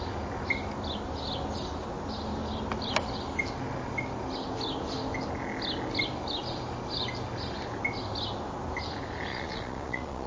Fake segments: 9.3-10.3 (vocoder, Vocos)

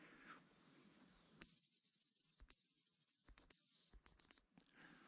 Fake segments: 0.5-2.0 (vocoder, Vocos); 2.8-4.6

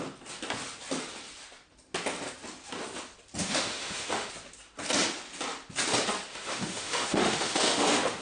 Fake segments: 3.4-4.3 (autoencoder, DAC-VAE); 6.3-8.2

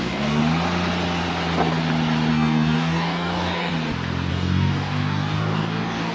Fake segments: 0.0-0.4 (codec, DAC); 2.3-3.7; 4.3-6.1